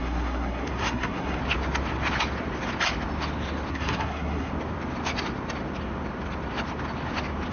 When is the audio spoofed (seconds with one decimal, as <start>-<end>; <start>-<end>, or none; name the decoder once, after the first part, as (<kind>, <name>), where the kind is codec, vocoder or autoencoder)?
0.0-1.4 (codec, SNAC); 3.7-4.5

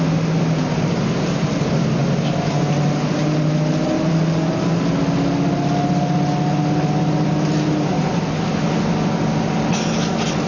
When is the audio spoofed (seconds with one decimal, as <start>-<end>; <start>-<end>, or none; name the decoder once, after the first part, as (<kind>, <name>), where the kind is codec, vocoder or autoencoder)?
none